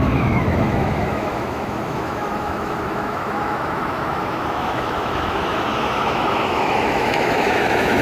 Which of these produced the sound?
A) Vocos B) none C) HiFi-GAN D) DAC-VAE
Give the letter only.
D